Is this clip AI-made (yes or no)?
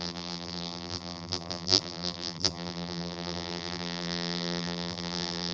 yes